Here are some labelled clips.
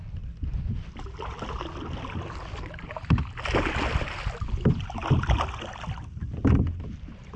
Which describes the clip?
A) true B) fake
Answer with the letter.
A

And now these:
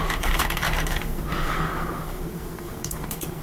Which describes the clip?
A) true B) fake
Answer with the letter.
B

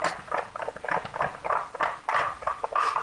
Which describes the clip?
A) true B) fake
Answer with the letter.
A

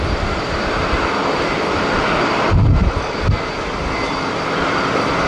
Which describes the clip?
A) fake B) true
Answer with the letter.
B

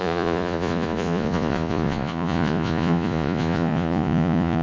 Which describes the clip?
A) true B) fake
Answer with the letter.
B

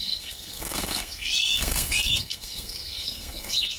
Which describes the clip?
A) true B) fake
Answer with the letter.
B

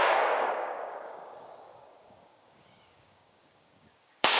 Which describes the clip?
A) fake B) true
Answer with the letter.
A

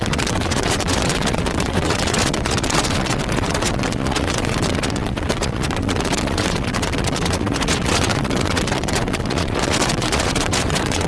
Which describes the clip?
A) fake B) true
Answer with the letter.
A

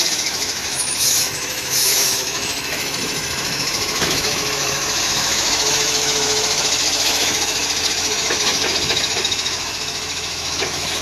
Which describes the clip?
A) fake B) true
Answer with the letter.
A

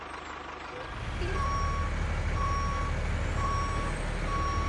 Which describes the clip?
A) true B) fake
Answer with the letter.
A